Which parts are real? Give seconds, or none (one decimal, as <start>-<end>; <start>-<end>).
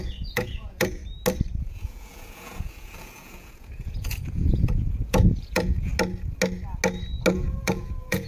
1.0-1.6; 5.9-7.3